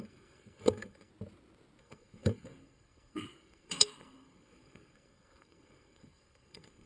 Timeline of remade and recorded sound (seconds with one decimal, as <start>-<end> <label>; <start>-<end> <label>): 0.0-1.1 remade; 1.1-1.8 recorded; 1.8-6.9 remade